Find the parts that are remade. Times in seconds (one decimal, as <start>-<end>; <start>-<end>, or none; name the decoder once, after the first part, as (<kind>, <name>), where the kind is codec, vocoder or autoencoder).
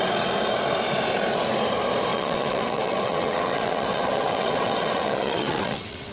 2.1-6.1 (vocoder, WaveNeXt)